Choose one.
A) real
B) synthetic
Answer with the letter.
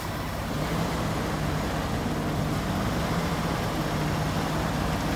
A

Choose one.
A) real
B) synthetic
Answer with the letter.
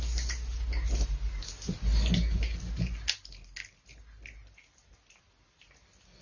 A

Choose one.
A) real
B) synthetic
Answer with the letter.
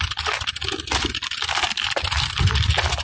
A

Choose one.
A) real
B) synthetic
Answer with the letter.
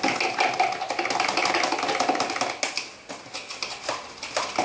A